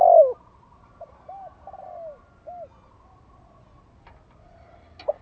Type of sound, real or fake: real